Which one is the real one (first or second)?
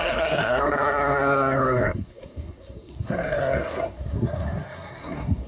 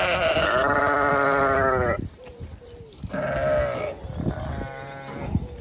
second